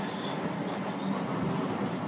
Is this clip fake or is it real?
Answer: real